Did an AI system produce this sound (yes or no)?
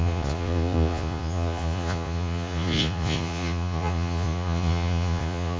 yes